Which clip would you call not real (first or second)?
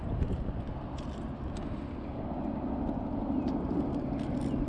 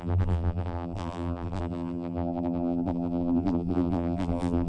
second